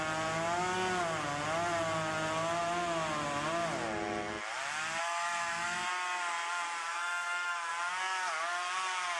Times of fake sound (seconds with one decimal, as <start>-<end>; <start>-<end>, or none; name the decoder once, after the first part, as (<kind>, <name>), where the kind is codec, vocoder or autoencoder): 5.0-5.9 (autoencoder, DAC-VAE); 6.9-7.7